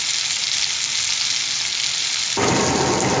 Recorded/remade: recorded